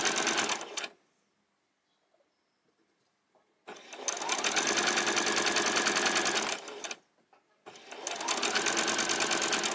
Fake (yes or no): no